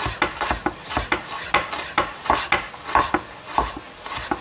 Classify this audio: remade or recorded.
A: recorded